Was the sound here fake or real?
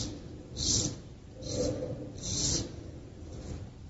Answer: real